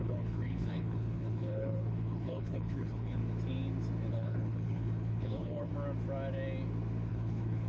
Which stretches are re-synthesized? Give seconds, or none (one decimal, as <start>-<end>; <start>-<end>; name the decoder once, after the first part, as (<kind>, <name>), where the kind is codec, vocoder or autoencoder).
0.0-3.2 (codec, HILCodec); 4.1-5.7; 7.1-7.7